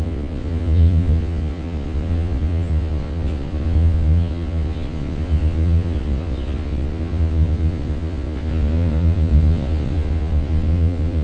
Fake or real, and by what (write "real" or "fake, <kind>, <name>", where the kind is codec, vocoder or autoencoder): fake, vocoder, Vocos